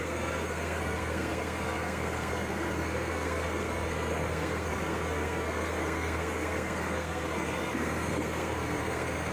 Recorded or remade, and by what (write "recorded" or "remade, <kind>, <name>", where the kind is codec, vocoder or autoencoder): remade, codec, SNAC